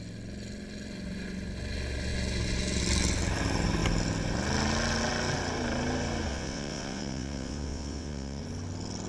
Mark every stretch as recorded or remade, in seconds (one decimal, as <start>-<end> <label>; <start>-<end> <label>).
0.0-6.3 recorded; 6.3-8.4 remade; 8.4-9.1 recorded